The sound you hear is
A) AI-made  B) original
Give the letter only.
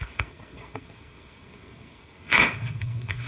A